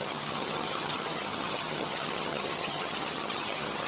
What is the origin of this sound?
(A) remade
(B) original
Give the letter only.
A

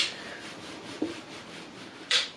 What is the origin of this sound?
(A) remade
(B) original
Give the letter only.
A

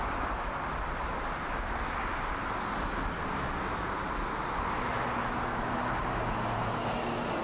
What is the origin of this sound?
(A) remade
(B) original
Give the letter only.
B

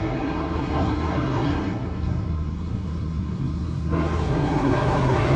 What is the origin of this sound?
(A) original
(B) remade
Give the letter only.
B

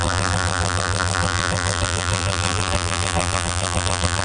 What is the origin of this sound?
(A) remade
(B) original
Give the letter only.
A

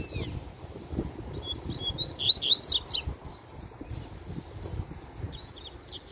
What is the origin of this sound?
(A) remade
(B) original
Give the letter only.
B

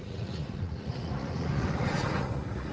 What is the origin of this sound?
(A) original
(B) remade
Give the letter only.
B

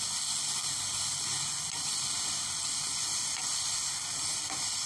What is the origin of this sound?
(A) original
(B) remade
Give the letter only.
A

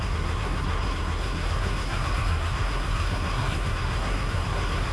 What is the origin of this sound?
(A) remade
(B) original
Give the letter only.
A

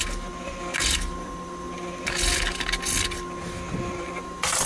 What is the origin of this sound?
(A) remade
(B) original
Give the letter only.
B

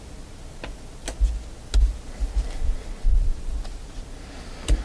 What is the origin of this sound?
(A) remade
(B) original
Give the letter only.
B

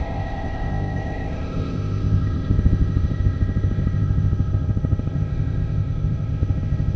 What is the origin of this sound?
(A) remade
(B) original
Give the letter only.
A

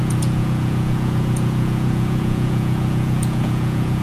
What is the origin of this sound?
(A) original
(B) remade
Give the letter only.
B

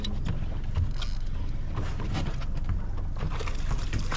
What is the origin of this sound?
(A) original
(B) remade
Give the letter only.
A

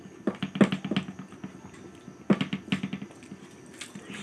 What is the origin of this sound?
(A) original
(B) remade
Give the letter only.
A